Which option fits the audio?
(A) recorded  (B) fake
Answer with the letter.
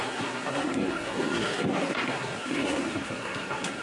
B